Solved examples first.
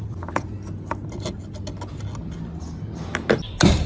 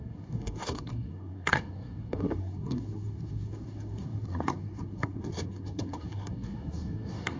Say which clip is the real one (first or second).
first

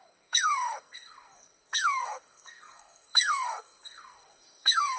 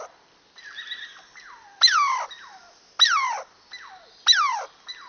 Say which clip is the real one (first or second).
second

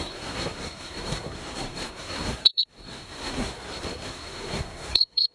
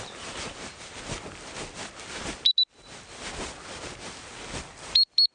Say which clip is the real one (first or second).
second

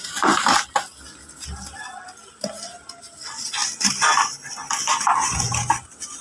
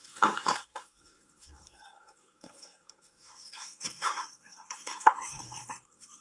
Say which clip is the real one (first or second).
first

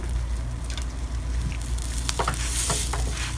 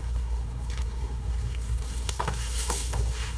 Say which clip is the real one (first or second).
first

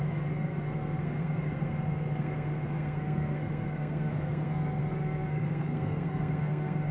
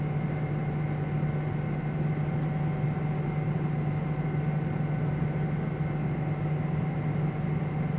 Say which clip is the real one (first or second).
second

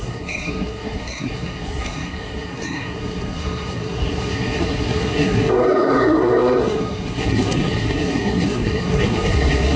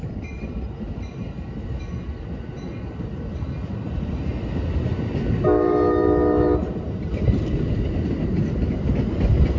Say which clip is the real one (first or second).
second